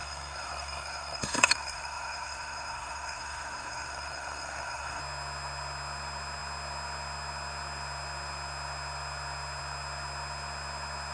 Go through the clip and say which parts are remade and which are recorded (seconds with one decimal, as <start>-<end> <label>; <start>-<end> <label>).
0.0-5.0 remade; 5.0-11.1 recorded